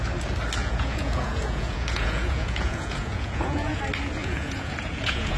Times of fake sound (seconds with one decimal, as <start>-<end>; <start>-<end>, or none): 0.6-3.8; 4.2-5.4